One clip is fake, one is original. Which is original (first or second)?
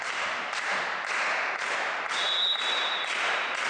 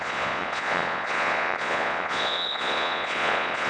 first